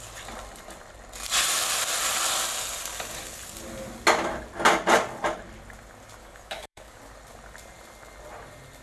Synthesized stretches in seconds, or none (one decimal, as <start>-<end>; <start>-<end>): 6.2-7.0